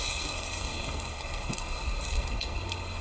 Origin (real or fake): fake